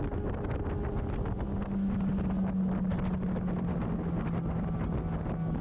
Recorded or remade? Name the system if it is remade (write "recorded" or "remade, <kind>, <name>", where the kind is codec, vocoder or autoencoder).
recorded